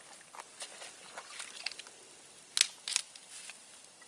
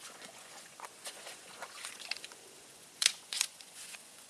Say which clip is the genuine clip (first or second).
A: first